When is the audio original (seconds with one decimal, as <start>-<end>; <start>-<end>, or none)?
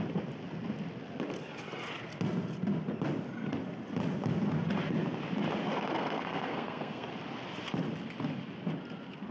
0.0-5.6; 7.1-9.3